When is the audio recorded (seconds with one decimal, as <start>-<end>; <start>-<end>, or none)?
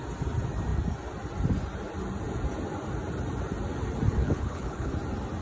0.0-4.2; 4.9-5.4